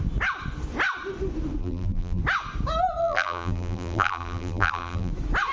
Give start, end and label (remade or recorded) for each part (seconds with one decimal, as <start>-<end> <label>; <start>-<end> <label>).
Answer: 0.0-1.6 recorded; 1.6-2.2 remade; 2.2-3.0 recorded; 3.0-5.1 remade; 5.1-5.5 recorded